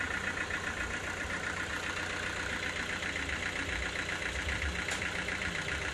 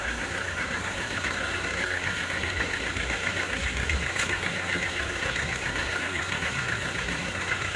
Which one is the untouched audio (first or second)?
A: first